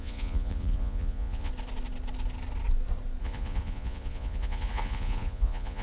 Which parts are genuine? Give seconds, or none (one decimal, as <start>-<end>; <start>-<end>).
1.5-3.2